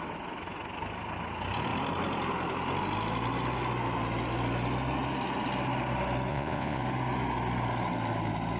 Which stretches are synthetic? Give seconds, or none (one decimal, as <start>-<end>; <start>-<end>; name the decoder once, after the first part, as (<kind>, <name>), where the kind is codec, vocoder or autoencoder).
6.3-6.8 (vocoder, Vocos)